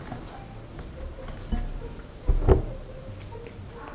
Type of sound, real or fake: real